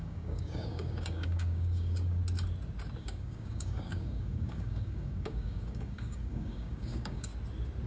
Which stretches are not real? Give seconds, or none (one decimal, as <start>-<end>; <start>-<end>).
0.0-2.2; 3.0-7.3